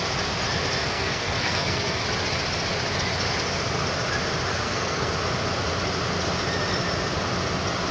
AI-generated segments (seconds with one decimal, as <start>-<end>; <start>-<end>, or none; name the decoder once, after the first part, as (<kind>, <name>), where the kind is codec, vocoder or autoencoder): 0.8-2.0 (codec, SNAC); 4.5-5.1